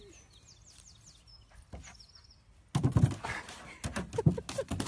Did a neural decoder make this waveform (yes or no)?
no